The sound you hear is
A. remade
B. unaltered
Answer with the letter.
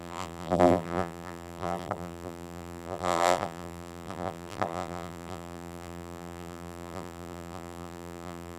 A